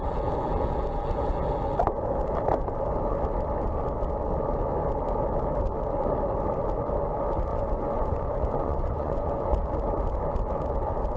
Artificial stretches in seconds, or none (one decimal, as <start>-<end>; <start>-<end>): 7.5-9.6